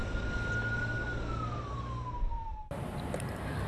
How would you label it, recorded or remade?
recorded